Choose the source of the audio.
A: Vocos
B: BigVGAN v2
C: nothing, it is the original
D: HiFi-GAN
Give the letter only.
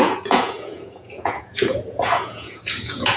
A